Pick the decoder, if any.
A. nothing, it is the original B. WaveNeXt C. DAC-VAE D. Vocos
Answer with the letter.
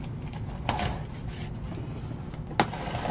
A